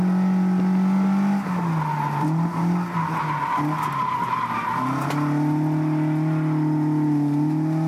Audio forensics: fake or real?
real